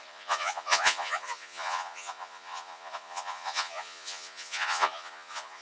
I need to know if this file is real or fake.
fake